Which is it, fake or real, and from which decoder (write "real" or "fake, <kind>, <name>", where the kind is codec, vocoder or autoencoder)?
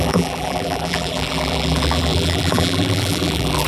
fake, vocoder, BigVGAN v2